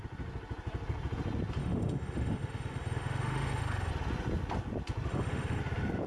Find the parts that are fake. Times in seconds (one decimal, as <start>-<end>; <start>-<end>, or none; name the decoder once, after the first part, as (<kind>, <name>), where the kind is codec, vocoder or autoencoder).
1.6-3.9 (autoencoder, DAC-VAE); 5.1-5.6